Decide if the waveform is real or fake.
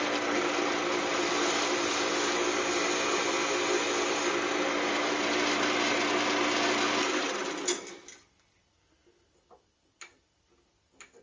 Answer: real